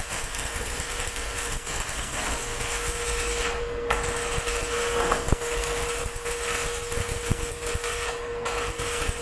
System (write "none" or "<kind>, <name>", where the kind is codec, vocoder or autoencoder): codec, SNAC